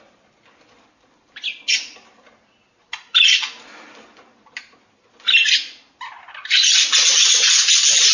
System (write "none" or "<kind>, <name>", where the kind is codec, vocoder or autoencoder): none